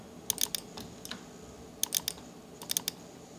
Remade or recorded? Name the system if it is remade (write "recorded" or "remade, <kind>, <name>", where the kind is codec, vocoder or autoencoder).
recorded